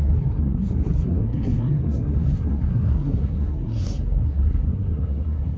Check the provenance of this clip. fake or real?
fake